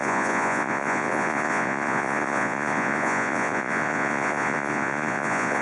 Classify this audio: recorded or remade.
remade